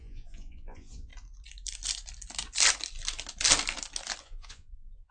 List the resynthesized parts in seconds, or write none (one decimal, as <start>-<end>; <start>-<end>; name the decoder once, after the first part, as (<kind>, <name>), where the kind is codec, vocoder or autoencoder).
0.0-1.1 (vocoder, Vocos); 4.2-5.1